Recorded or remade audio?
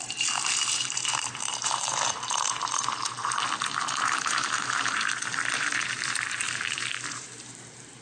remade